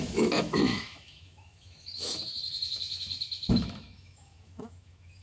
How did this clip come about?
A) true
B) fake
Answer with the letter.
B